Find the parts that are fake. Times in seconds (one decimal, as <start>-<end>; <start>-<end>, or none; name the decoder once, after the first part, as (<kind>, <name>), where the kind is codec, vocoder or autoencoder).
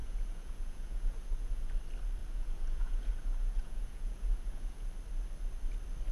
0.0-1.7 (vocoder, Vocos); 2.2-4.9